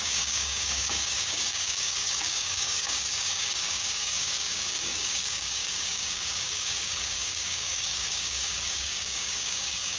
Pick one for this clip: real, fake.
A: fake